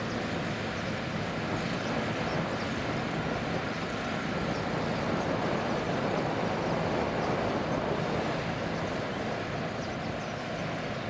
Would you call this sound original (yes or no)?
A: yes